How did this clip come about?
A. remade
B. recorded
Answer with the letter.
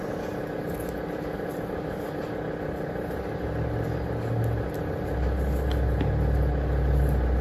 B